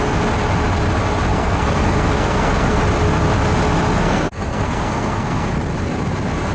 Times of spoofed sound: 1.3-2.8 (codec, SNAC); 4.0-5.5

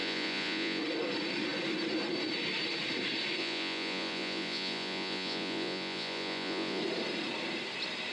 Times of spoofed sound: 0.0-0.8 (vocoder, Vocos); 3.4-6.8

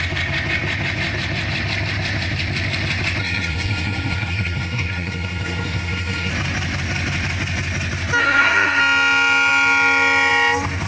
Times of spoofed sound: 3.2-6.3 (codec, SNAC); 8.2-8.8

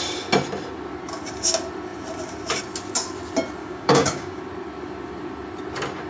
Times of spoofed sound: 3.6-4.4 (codec, DAC)

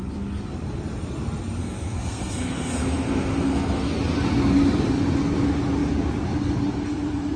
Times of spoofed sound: 1.6-4.0 (codec, SNAC)